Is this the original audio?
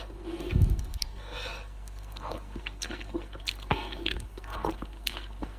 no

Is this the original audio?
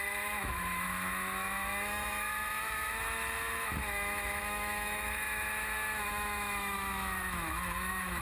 no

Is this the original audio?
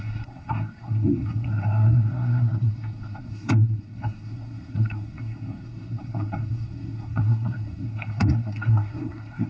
no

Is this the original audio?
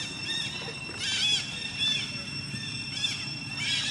yes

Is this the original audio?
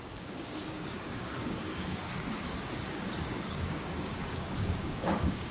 no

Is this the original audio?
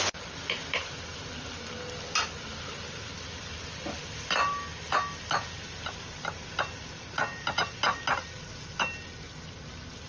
yes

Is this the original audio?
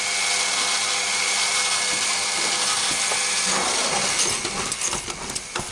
yes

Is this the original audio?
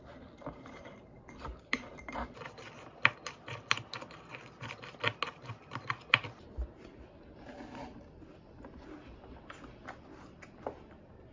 yes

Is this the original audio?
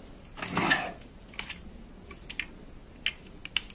yes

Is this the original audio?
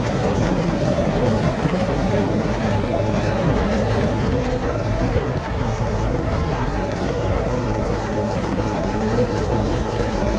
no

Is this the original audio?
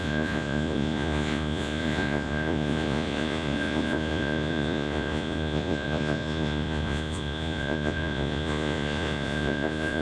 no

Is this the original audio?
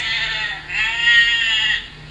yes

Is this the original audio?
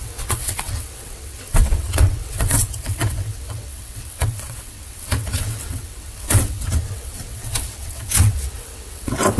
no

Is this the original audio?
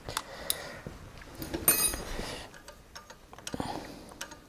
yes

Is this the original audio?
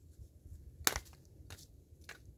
yes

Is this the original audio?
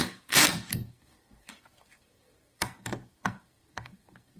no